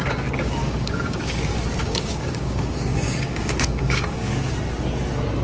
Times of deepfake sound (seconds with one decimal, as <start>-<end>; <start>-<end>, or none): 0.4-1.2; 1.8-4.5